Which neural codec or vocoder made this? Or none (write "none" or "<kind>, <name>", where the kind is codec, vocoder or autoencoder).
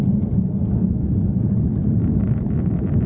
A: none